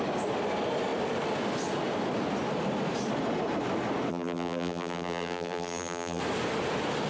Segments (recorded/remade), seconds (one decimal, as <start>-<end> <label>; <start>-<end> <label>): 0.0-4.1 recorded; 4.1-6.2 remade; 6.2-7.1 recorded